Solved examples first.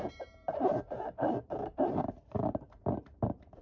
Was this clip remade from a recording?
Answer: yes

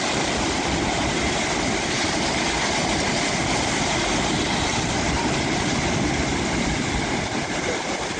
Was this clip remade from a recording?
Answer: no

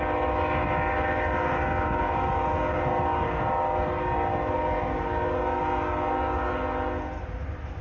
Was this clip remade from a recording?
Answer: no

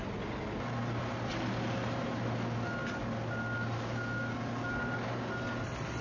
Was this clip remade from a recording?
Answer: no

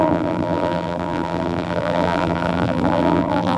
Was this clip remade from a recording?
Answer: yes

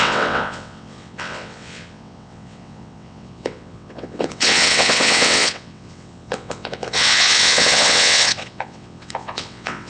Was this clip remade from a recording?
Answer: yes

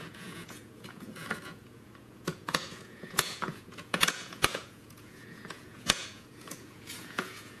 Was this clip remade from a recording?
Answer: yes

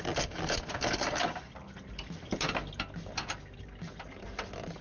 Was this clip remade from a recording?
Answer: no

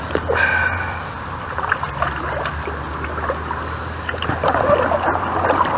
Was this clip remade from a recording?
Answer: no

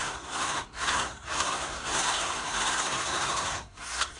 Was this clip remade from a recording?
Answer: yes